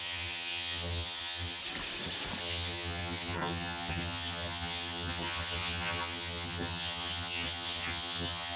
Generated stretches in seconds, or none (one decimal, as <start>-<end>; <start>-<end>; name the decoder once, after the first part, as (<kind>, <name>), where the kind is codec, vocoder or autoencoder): 0.0-1.6 (vocoder, HiFi-GAN); 2.4-8.6